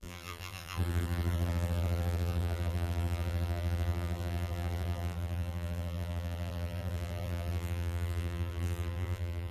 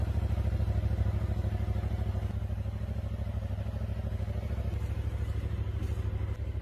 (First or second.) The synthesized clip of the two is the first